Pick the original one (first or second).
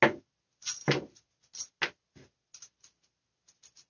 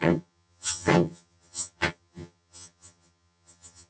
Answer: first